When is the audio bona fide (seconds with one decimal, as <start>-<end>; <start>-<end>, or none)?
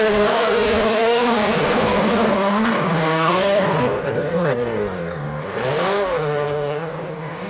none